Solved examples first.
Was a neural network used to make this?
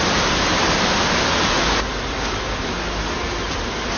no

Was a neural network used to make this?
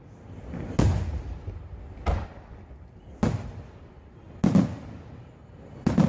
no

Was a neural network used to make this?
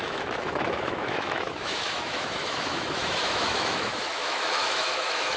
yes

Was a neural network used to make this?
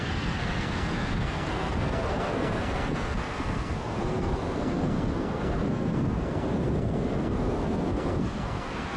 yes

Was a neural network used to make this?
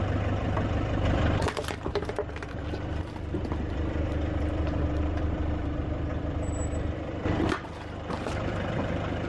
yes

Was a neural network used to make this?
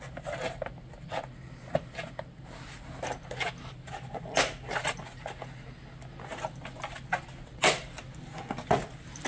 no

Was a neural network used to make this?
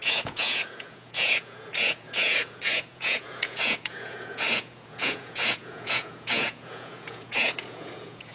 yes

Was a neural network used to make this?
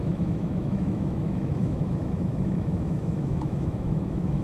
yes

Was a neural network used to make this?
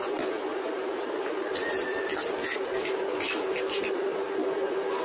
no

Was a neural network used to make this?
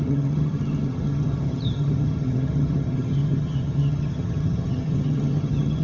yes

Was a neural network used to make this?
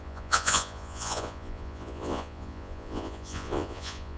yes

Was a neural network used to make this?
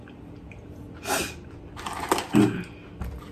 no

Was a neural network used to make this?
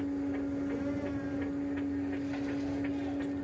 no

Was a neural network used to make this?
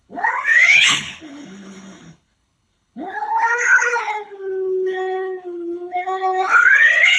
yes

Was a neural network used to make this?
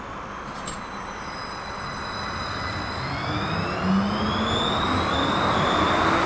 no